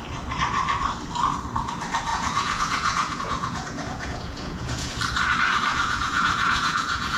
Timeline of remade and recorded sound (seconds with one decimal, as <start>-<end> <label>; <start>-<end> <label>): 0.0-2.1 recorded; 2.1-4.9 remade; 4.9-5.7 recorded; 5.7-7.2 remade